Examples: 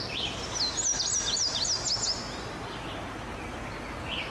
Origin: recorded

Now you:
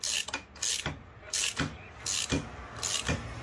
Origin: recorded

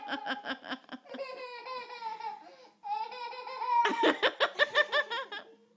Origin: recorded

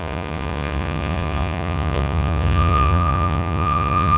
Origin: remade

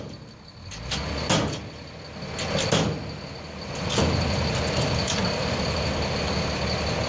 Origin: recorded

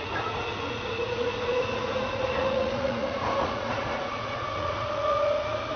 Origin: remade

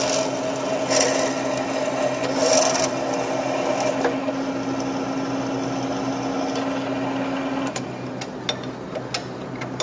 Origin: recorded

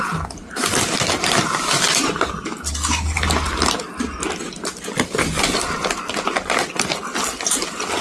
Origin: recorded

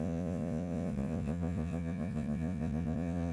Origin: remade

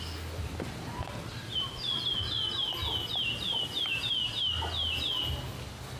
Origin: recorded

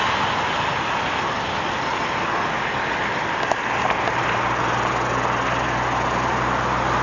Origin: recorded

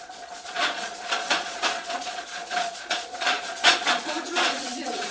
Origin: remade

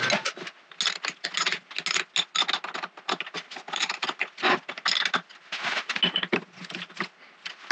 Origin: recorded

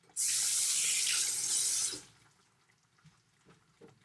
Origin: recorded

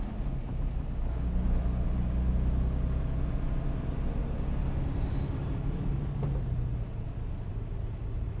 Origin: recorded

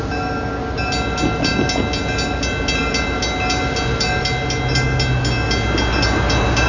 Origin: recorded